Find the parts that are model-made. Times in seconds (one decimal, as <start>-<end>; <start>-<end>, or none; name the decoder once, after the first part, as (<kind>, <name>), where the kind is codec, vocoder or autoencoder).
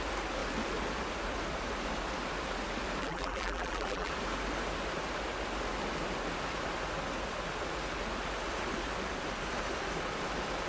3.0-4.1 (vocoder, BigVGAN v2)